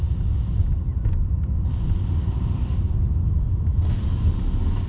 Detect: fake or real real